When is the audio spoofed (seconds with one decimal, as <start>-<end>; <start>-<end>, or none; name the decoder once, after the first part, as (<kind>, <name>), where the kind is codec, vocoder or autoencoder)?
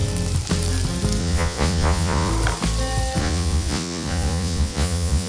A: 1.2-2.3 (vocoder, Vocos); 3.2-5.3